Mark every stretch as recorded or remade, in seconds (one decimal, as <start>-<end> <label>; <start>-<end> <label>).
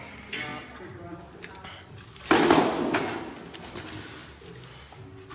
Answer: 0.0-5.3 recorded